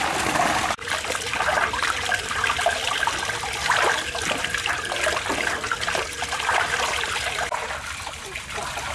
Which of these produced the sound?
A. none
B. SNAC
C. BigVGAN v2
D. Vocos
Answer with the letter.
A